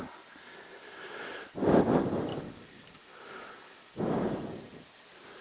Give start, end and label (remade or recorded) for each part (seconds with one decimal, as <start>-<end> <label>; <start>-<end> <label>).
0.0-2.3 recorded; 2.3-4.0 remade; 4.0-5.4 recorded

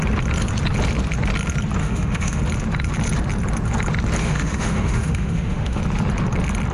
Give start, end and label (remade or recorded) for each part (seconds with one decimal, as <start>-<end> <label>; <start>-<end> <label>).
0.0-1.8 recorded; 1.8-2.4 remade; 2.4-4.2 recorded; 4.2-5.8 remade; 5.8-6.7 recorded

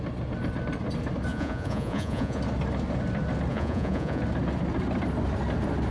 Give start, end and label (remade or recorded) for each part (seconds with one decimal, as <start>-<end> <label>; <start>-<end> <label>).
0.0-1.3 recorded; 1.3-2.4 remade; 2.4-3.5 recorded; 3.5-4.2 remade; 4.2-5.9 recorded

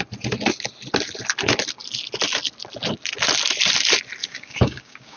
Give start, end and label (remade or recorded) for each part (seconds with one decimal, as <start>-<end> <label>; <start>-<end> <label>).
0.0-4.2 recorded; 4.2-5.2 remade

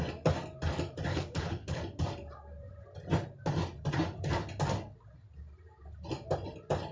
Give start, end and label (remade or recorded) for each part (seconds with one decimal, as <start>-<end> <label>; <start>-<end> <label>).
0.0-1.1 recorded; 1.1-1.8 remade; 1.8-6.9 recorded

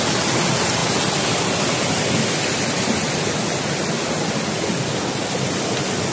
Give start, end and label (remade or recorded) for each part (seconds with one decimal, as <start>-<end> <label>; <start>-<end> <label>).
0.0-6.1 recorded

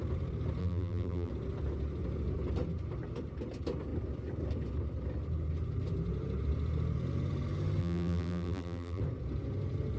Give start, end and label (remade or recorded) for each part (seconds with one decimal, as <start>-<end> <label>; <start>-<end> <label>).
0.0-0.6 recorded; 0.6-1.3 remade; 1.3-7.8 recorded; 7.8-9.0 remade; 9.0-10.0 recorded

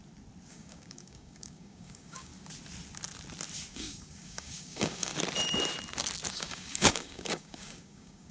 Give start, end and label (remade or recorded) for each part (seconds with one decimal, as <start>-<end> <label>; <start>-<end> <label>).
0.0-0.5 recorded; 0.5-2.3 remade; 2.3-3.7 recorded; 3.7-5.1 remade; 5.1-6.3 recorded; 6.3-8.3 remade